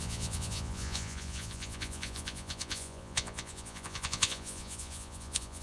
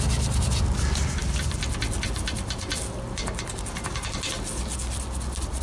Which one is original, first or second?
second